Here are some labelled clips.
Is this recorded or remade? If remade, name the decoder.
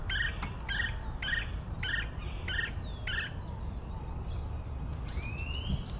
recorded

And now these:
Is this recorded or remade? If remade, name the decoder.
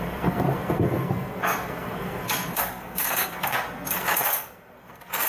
remade, codec, SNAC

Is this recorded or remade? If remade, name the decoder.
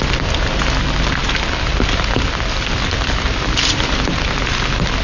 recorded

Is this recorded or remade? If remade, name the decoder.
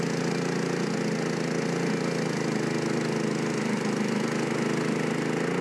recorded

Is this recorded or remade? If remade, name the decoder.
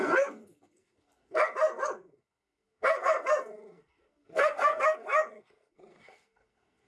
remade, codec, SNAC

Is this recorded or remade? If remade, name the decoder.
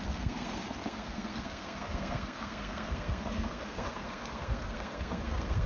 remade, codec, SNAC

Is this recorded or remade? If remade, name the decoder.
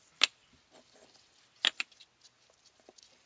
recorded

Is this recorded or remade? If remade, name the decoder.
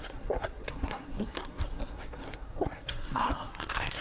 remade, codec, SNAC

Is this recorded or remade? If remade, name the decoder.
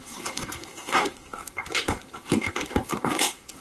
remade, codec, SNAC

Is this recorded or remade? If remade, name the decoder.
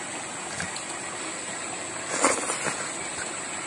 recorded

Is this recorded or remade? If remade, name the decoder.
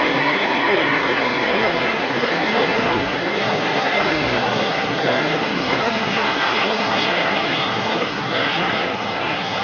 remade, codec, SNAC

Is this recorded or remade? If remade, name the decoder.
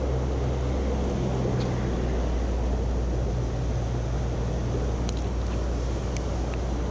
recorded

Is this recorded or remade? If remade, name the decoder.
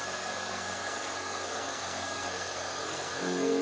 remade, codec, SNAC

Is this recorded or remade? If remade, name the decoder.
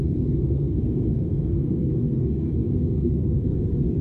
remade, codec, SNAC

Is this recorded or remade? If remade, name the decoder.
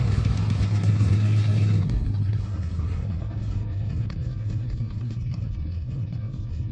remade, codec, SNAC